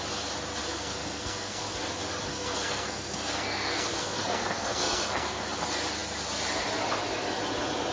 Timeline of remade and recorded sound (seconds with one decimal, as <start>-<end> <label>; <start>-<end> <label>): 0.0-0.6 recorded; 0.6-1.6 remade; 1.6-2.3 recorded; 2.3-5.4 remade; 5.4-7.9 recorded